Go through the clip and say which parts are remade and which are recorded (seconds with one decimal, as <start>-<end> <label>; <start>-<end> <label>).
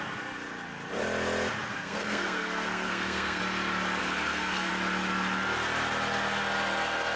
0.0-1.7 recorded; 1.7-3.4 remade; 3.4-4.0 recorded; 4.0-4.7 remade; 4.7-7.2 recorded